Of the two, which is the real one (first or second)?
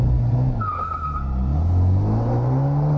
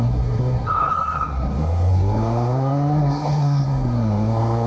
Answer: first